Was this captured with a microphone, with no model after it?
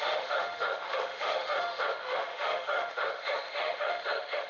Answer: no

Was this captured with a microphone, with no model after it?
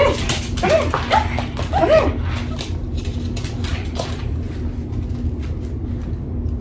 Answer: yes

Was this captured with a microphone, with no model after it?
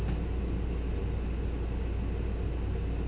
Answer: yes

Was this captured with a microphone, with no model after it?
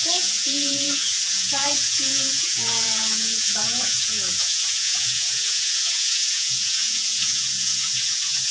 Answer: no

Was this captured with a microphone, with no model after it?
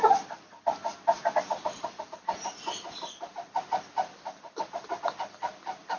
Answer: yes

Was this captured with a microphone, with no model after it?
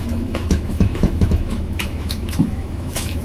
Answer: no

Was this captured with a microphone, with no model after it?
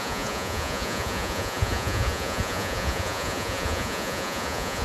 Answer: no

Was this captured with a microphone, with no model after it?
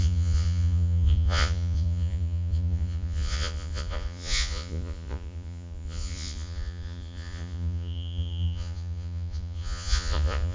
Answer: no